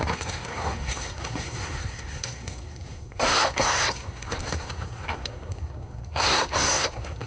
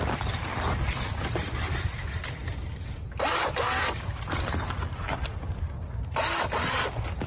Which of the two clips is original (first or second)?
second